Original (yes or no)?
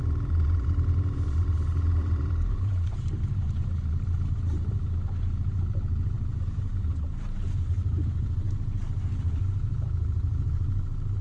no